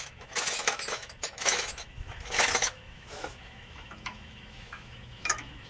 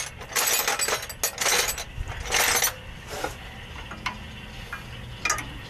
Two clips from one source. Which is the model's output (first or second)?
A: first